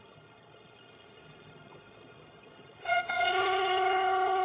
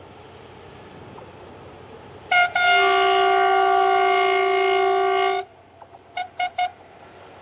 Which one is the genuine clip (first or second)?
second